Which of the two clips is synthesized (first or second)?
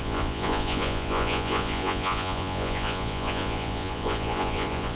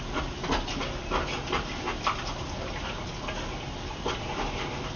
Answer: first